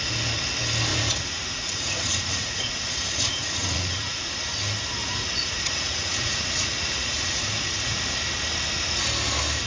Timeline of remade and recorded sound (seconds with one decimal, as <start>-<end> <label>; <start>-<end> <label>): 0.0-0.9 recorded; 0.9-4.3 remade; 4.3-5.0 recorded; 5.0-7.9 remade; 7.9-9.7 recorded